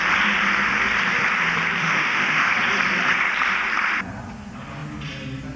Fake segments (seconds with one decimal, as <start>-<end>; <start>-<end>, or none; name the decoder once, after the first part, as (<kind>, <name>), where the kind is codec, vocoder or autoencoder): 1.8-2.5 (autoencoder, DAC-VAE)